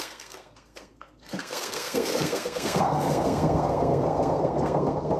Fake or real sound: fake